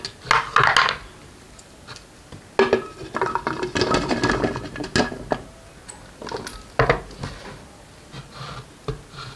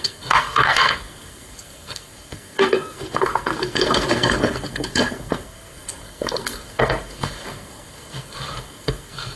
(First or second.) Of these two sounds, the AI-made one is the second